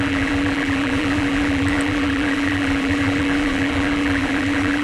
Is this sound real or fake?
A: fake